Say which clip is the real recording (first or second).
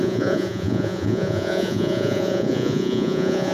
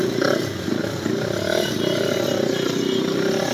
second